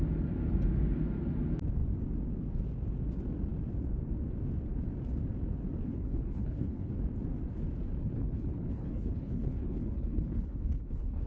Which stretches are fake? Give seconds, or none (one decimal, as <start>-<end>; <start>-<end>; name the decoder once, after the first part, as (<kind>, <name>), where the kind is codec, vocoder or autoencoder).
5.8-6.9 (codec, HILCodec); 8.0-11.3